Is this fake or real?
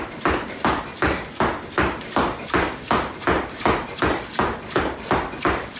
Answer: real